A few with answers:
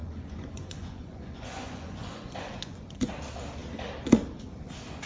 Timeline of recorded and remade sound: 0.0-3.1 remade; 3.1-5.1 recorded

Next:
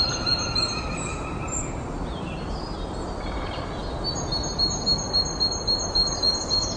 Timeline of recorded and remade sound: 0.0-6.8 recorded

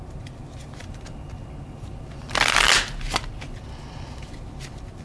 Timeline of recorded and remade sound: 0.0-5.0 recorded

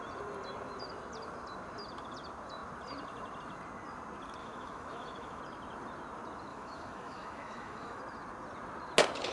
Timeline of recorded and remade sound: 0.0-4.4 recorded; 4.4-5.4 remade; 5.4-6.5 recorded; 6.5-8.0 remade; 8.0-9.3 recorded

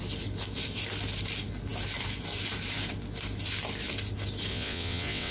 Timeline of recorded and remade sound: 0.0-4.5 recorded; 4.5-5.3 remade

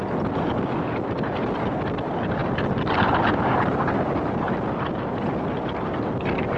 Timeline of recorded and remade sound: 0.0-2.4 recorded; 2.4-3.4 remade; 3.4-6.6 recorded

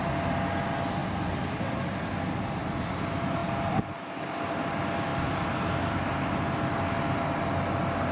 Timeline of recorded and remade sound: 0.0-8.1 recorded